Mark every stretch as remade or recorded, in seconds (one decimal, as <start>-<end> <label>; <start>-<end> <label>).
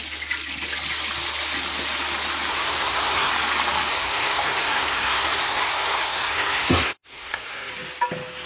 0.0-2.5 recorded; 2.5-3.3 remade; 3.3-3.9 recorded; 3.9-7.7 remade; 7.7-8.5 recorded